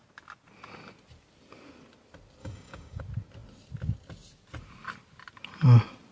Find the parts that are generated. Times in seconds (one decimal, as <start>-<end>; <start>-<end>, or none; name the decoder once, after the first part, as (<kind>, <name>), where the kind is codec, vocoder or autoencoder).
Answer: 2.4-3.0 (codec, DAC)